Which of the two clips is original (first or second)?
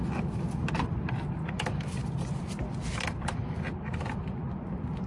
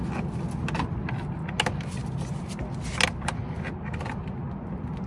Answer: second